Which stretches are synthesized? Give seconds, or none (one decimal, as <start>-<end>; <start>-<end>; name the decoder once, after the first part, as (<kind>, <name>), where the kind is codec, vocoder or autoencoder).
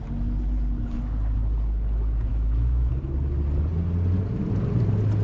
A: 2.3-2.9 (autoencoder, DAC-VAE)